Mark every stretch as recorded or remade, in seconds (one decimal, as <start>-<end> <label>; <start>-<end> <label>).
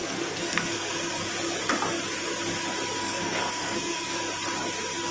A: 0.0-1.1 remade; 1.1-3.0 recorded; 3.0-4.2 remade; 4.2-5.1 recorded